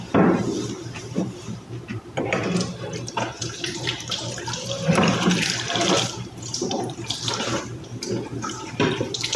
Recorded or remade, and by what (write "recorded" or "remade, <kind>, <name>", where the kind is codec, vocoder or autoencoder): remade, vocoder, BigVGAN v2